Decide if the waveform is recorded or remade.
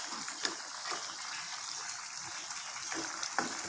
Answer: recorded